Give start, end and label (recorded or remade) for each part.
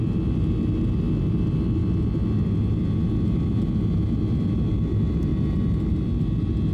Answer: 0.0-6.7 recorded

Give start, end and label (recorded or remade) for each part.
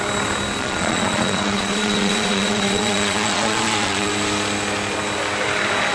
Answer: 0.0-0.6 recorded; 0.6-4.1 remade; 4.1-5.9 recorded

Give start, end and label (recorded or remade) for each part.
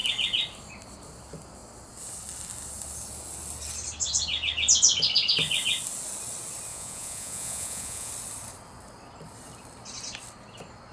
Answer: 0.0-6.7 recorded; 6.7-8.1 remade; 8.1-10.9 recorded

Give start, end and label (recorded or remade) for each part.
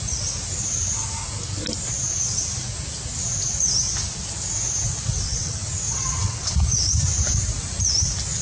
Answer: 0.0-5.3 recorded; 5.3-6.5 remade; 6.5-8.4 recorded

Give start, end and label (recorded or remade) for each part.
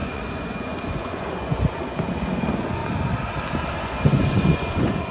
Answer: 0.0-2.8 remade; 2.8-3.8 recorded; 3.8-5.1 remade